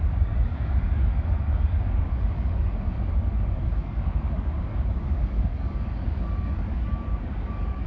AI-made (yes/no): yes